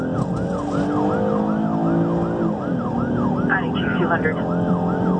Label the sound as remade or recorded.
recorded